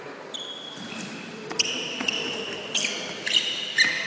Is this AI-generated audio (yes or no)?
no